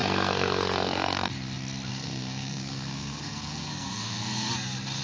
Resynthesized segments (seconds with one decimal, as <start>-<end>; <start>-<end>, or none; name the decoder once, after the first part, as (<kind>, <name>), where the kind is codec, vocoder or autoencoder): 0.0-1.3 (codec, SNAC); 1.9-4.5